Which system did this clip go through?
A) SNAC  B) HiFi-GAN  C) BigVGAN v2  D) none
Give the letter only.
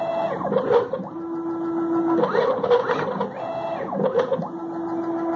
D